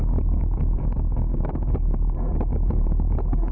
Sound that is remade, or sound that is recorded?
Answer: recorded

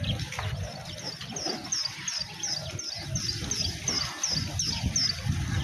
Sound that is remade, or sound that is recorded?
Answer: recorded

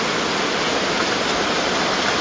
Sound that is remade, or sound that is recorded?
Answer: recorded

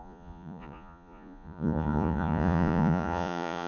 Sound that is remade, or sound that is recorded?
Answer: remade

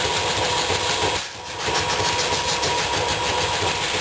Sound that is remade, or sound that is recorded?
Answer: recorded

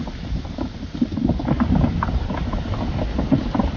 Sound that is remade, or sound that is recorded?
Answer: recorded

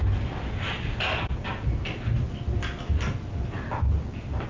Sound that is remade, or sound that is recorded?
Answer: recorded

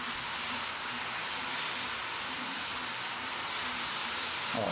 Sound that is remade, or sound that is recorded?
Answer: remade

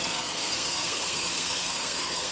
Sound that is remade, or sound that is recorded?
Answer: remade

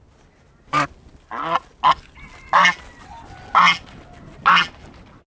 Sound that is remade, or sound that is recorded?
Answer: recorded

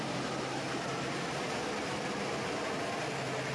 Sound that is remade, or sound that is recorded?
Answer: recorded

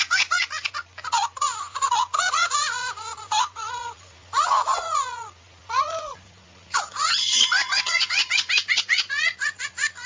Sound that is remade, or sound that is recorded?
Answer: remade